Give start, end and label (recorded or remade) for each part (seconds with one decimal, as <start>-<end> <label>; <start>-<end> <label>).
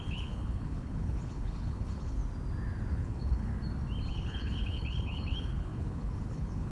0.0-2.2 remade; 2.2-2.9 recorded; 2.9-3.5 remade; 3.5-4.1 recorded; 4.1-6.7 remade